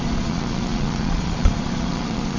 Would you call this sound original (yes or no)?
no